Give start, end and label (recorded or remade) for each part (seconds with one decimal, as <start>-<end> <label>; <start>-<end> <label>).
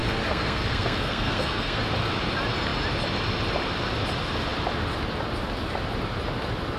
0.0-1.8 remade; 1.8-6.8 recorded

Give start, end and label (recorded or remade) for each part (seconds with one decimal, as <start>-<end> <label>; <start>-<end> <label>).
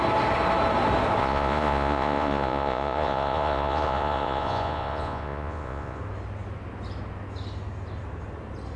0.0-1.2 recorded; 1.2-6.0 remade; 6.0-8.8 recorded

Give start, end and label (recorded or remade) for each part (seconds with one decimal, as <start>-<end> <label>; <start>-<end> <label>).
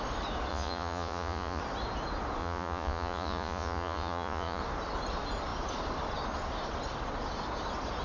0.0-0.5 recorded; 0.5-1.6 remade; 1.6-2.4 recorded; 2.4-4.6 remade; 4.6-8.0 recorded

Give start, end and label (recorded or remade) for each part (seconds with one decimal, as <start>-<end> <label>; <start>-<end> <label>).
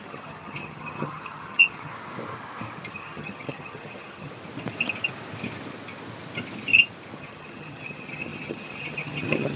0.0-1.9 remade; 1.9-2.9 recorded; 2.9-4.3 remade; 4.3-7.2 recorded; 7.2-9.6 remade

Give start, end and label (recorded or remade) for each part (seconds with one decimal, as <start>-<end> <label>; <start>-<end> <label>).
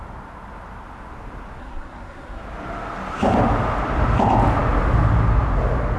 0.0-1.6 recorded; 1.6-2.4 remade; 2.4-6.0 recorded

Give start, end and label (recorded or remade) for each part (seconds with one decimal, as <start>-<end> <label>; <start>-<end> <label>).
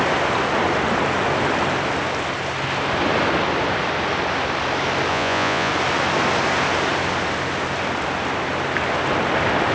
0.0-5.1 recorded; 5.1-5.7 remade; 5.7-9.7 recorded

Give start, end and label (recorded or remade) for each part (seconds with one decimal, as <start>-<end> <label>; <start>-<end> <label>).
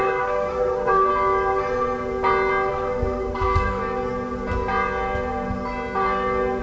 0.0-1.1 remade; 1.1-2.7 recorded; 2.7-3.8 remade; 3.8-6.6 recorded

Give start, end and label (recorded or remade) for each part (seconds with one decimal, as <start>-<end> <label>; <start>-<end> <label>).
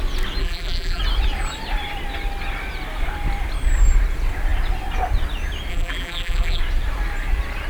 0.0-0.4 recorded; 0.4-1.0 remade; 1.0-5.7 recorded; 5.7-6.6 remade; 6.6-7.7 recorded